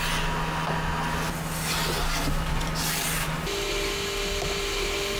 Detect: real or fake real